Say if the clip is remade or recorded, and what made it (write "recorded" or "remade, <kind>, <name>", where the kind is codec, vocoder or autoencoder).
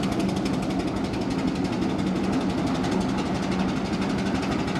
recorded